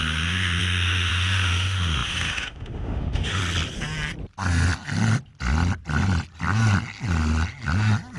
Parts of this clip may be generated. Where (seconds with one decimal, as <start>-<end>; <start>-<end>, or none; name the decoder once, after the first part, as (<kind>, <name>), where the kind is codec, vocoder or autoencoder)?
0.0-3.4 (autoencoder, DAC-VAE)